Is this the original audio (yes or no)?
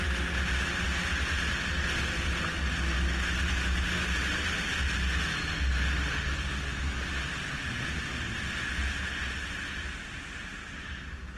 yes